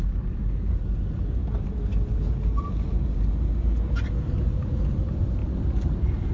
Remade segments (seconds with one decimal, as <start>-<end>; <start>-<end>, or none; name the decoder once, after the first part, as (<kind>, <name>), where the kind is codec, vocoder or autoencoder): 1.4-3.3 (vocoder, BigVGAN v2)